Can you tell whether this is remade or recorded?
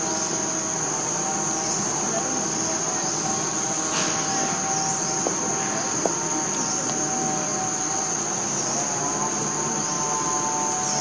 recorded